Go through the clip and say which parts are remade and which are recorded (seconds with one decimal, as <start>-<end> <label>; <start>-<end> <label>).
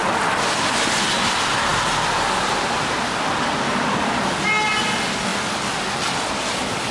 0.0-6.9 recorded